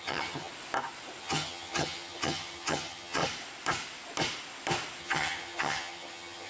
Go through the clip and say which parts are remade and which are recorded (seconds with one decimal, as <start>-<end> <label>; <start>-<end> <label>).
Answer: 0.0-0.5 remade; 0.5-1.2 recorded; 1.2-3.2 remade; 3.2-5.0 recorded; 5.0-6.5 remade